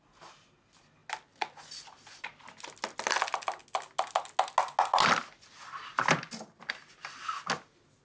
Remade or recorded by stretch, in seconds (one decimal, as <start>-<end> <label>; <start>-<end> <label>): 0.0-8.0 recorded